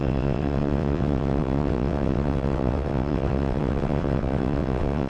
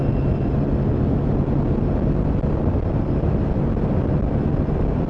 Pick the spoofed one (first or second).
first